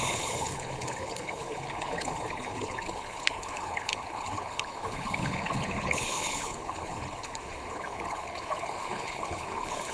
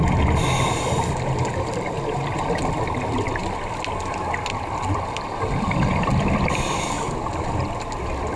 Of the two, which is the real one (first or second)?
second